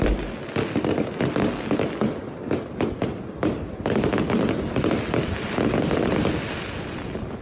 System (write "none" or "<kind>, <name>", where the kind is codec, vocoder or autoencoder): none